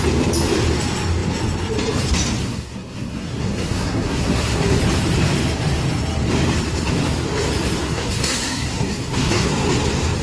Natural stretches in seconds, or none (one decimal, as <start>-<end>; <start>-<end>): 0.0-2.4; 4.8-7.8; 9.5-10.2